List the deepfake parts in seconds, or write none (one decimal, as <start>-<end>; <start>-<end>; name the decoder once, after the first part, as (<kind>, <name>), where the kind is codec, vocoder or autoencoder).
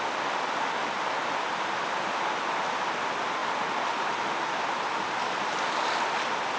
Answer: none